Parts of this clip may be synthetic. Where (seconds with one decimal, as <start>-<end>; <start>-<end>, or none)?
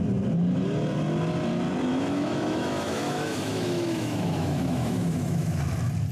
1.9-5.6